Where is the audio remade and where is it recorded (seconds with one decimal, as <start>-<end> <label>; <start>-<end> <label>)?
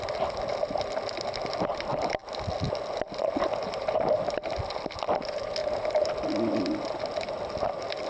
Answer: 0.0-3.6 recorded; 3.6-4.5 remade; 4.5-5.6 recorded; 5.6-6.1 remade; 6.1-8.1 recorded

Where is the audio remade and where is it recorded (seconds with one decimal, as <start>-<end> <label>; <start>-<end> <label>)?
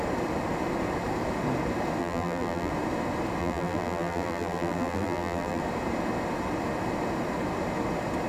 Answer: 0.0-2.0 recorded; 2.0-2.7 remade; 2.7-3.4 recorded; 3.4-5.6 remade; 5.6-8.3 recorded